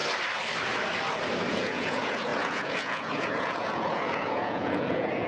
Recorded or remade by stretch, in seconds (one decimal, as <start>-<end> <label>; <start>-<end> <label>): 0.0-1.5 recorded; 1.5-5.3 remade